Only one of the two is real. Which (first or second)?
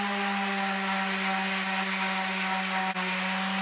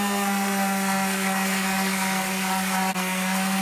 first